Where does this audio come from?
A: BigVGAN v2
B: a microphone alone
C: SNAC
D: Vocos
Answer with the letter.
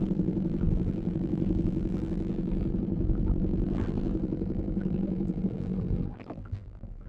A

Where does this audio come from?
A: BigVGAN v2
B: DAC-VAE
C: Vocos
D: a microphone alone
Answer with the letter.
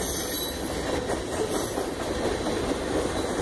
D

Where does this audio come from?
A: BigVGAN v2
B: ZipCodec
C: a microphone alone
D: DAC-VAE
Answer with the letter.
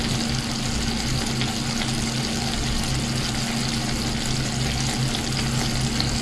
C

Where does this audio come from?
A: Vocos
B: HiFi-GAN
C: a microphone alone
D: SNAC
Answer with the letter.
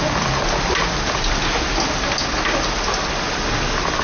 C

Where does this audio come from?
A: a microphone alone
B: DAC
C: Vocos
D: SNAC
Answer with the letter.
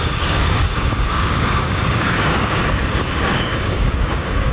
B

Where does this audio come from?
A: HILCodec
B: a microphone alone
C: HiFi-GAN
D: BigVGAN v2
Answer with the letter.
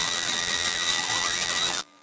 D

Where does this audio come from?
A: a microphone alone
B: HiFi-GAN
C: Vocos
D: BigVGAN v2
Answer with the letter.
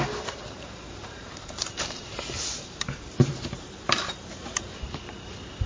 D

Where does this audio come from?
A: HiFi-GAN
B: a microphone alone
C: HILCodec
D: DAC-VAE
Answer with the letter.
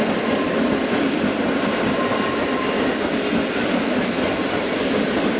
B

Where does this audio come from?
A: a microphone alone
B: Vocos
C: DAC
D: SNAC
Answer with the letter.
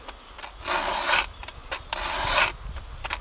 A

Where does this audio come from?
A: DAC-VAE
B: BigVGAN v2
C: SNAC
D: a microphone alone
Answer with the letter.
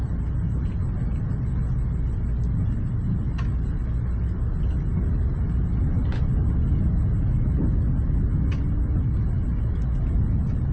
D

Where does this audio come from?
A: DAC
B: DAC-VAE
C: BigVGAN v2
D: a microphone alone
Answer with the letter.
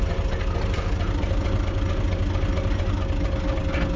D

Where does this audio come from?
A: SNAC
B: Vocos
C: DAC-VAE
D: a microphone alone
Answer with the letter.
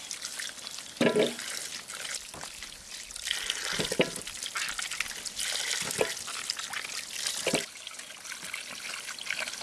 D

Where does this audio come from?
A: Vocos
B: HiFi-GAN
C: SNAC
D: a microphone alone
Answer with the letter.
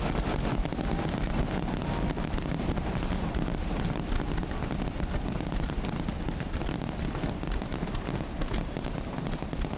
D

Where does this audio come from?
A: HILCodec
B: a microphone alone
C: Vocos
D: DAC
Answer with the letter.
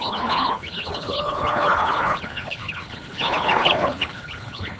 A